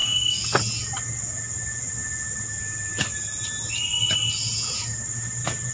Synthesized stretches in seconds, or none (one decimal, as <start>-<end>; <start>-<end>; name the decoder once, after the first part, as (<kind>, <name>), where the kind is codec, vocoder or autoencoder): 0.0-0.6 (codec, DAC)